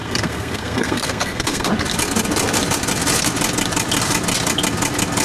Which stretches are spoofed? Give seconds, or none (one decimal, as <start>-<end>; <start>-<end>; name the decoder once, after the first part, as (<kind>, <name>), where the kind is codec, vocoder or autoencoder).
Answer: 0.0-1.7 (codec, SNAC)